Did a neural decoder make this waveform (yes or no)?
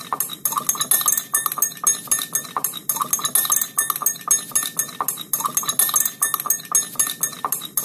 no